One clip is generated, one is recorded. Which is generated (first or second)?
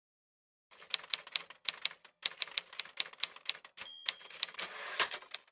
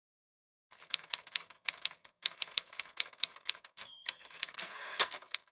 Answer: second